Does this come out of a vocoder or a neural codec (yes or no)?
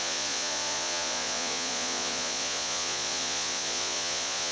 yes